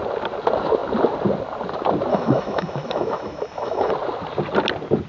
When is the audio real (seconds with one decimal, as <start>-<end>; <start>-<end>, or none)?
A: 0.0-2.1; 3.9-5.1